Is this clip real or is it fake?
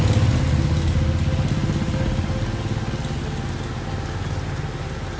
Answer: real